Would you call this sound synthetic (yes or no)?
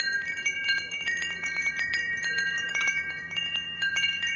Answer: yes